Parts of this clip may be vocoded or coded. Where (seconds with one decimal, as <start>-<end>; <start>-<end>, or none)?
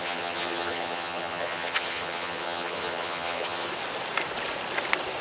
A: 0.0-3.7